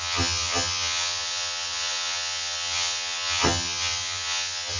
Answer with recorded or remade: remade